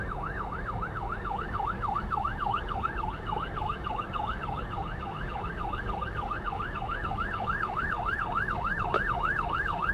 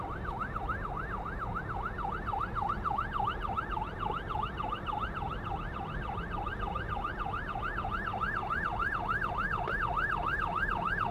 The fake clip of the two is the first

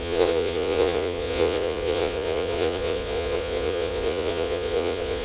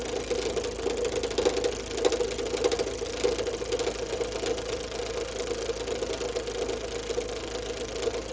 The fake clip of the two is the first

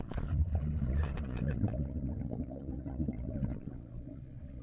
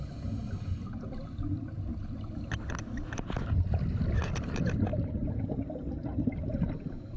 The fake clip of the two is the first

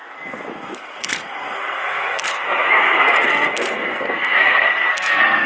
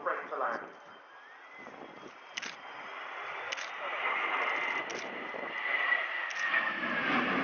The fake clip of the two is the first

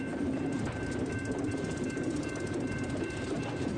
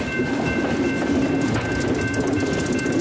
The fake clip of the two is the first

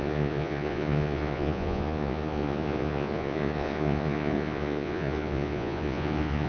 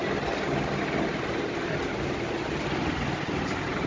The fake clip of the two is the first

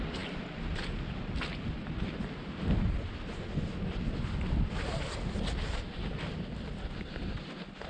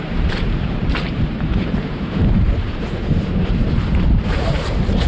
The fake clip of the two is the second